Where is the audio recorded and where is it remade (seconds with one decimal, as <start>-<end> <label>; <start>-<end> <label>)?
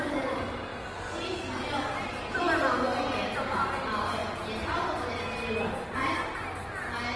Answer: 0.0-7.2 recorded